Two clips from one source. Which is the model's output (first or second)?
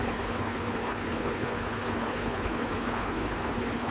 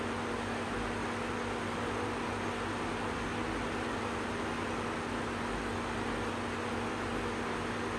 first